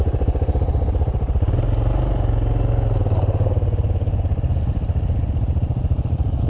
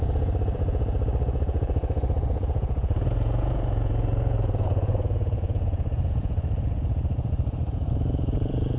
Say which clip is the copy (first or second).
second